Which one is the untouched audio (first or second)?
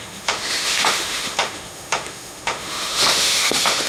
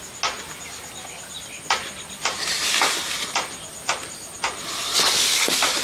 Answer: second